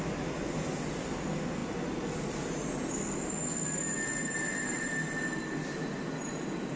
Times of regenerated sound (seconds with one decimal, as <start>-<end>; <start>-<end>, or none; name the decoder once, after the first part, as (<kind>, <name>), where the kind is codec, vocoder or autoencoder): none